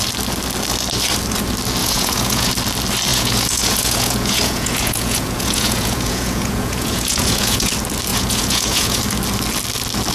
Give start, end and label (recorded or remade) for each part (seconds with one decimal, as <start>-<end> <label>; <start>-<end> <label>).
0.0-1.8 recorded; 1.8-2.5 remade; 2.5-3.1 recorded; 3.1-7.7 remade; 7.7-8.1 recorded; 8.1-9.0 remade; 9.0-10.1 recorded